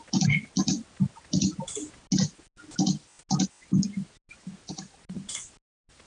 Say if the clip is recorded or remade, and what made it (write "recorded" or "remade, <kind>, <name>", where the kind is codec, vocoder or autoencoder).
recorded